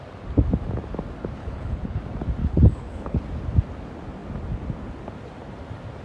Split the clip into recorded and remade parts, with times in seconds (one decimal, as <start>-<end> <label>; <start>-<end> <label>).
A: 0.0-1.4 recorded; 1.4-2.0 remade; 2.0-2.4 recorded; 2.4-3.2 remade; 3.2-6.0 recorded